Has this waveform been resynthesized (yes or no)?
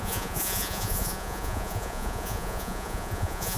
yes